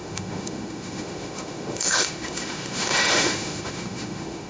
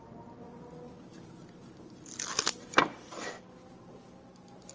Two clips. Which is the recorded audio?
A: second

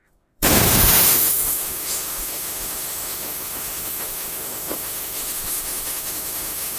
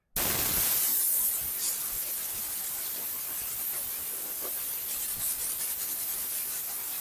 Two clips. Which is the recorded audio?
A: second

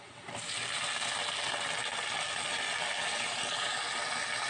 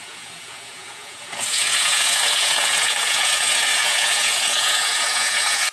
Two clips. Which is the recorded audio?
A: first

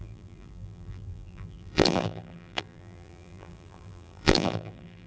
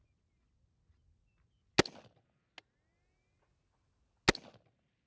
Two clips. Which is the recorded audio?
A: second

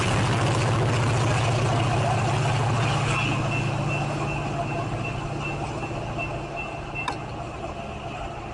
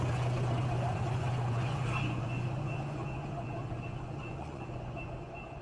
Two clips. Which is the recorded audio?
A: first